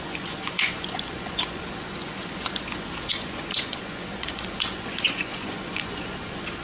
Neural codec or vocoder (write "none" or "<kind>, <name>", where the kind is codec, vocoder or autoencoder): vocoder, Vocos